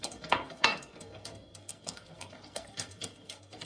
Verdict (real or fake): fake